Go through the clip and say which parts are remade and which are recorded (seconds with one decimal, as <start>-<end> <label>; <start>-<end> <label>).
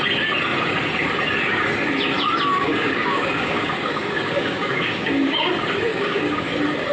0.0-2.5 recorded; 2.5-5.5 remade; 5.5-5.9 recorded; 5.9-6.5 remade; 6.5-6.9 recorded